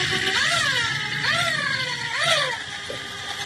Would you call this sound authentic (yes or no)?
yes